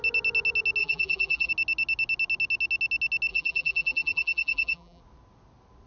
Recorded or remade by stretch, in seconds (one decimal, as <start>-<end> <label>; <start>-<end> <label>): 0.0-0.8 recorded; 0.8-1.5 remade; 1.5-3.3 recorded; 3.3-5.0 remade; 5.0-5.9 recorded